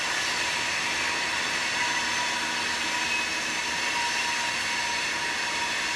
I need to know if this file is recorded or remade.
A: recorded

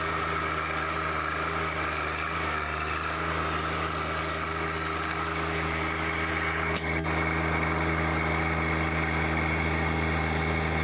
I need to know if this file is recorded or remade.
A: recorded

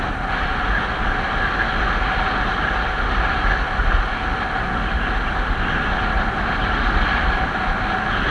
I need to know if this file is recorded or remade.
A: recorded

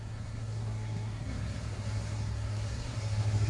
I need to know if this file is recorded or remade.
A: remade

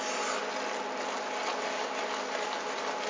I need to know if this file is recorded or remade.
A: recorded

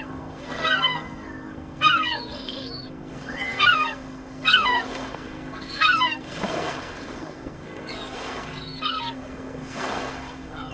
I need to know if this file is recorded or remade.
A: remade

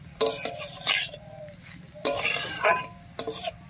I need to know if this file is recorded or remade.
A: recorded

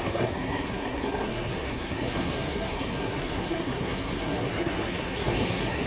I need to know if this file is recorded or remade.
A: remade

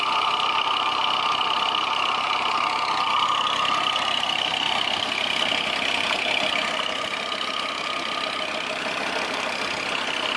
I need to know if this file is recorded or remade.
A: recorded